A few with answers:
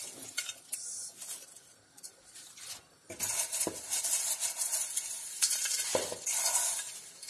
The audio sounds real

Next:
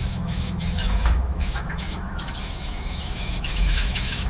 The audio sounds fake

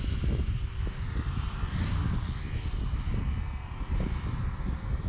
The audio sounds real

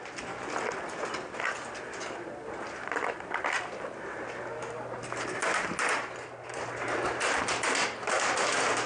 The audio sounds real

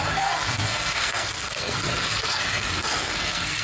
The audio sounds fake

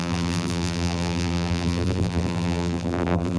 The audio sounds fake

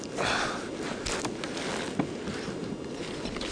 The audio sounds real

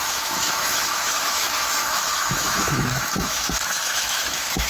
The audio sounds fake